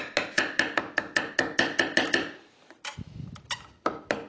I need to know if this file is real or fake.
real